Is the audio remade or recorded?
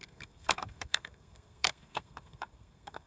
remade